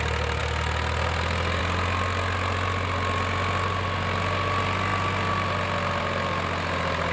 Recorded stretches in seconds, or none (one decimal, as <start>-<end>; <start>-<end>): 0.0-7.1